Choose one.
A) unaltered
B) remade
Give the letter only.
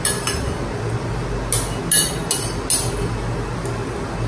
A